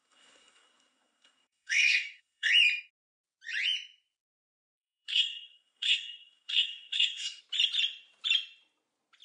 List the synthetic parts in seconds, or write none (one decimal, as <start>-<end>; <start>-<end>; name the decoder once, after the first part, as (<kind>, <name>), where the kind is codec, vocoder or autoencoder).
0.0-2.5 (codec, SNAC); 4.3-7.4